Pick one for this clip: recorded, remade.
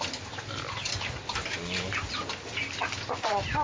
recorded